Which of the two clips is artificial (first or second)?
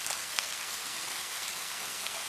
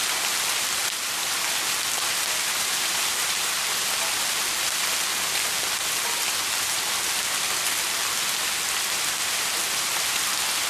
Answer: first